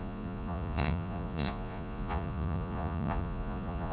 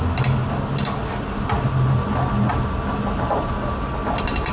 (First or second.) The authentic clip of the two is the second